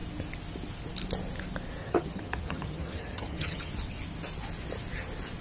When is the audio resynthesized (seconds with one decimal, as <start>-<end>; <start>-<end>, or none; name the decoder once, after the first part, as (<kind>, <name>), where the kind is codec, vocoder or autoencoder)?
1.8-3.7 (vocoder, HiFi-GAN)

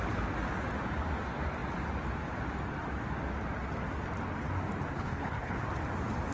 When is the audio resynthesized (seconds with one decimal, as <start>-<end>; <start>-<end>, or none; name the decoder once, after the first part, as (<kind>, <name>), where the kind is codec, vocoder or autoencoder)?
4.9-5.6 (codec, HILCodec)

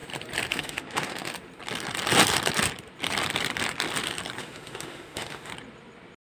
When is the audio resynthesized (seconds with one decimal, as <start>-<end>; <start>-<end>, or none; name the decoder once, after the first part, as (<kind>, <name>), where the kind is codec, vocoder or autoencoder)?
0.5-1.3 (autoencoder, DAC-VAE); 4.4-5.5

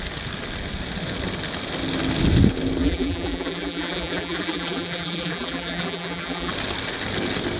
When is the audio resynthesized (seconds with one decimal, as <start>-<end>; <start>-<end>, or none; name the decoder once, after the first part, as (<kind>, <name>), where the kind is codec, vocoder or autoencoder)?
2.8-6.5 (vocoder, BigVGAN v2)

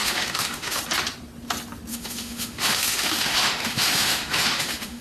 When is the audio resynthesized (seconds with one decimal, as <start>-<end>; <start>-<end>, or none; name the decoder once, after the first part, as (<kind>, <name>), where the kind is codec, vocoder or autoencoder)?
0.0-0.8 (autoencoder, DAC-VAE); 1.9-5.0

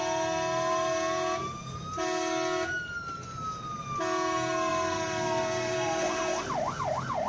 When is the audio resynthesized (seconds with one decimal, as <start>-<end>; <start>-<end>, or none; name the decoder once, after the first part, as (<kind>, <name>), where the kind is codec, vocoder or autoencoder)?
4.7-6.2 (vocoder, BigVGAN v2)